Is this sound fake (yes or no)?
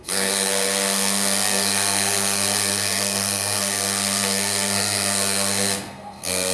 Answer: yes